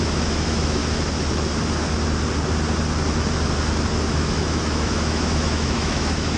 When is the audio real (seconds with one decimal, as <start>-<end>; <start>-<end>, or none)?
0.8-4.1

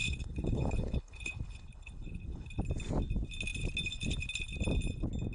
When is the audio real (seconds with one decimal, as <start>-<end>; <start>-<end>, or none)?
2.6-5.3

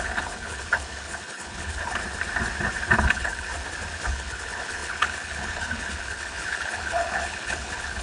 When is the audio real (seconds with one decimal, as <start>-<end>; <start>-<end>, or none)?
2.0-3.0; 3.5-4.1

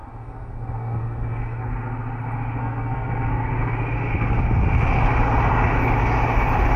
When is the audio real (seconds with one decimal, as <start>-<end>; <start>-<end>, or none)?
1.6-2.6; 3.3-6.8

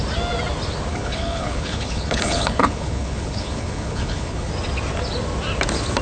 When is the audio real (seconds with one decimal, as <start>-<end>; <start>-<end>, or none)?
0.0-0.9; 4.5-6.0